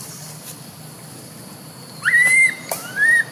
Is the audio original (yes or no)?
yes